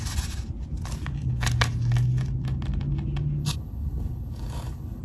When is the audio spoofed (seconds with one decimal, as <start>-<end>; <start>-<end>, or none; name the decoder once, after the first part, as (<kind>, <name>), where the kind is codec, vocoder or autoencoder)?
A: 3.4-5.0 (codec, HILCodec)